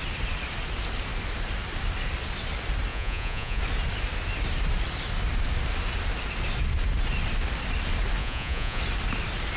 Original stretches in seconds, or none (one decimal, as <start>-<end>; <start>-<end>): 0.0-2.9; 3.6-8.2; 8.8-9.6